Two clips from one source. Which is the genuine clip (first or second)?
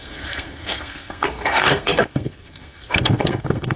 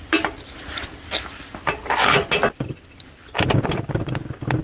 second